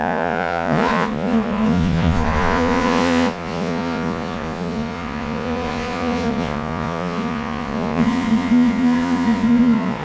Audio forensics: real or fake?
fake